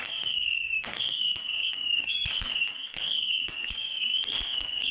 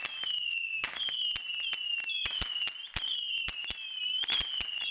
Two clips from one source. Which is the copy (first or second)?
first